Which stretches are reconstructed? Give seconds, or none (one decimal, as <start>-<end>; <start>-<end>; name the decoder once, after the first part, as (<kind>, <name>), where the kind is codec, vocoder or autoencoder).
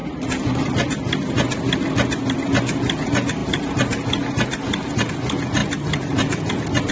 3.4-5.1 (vocoder, BigVGAN v2); 5.6-6.5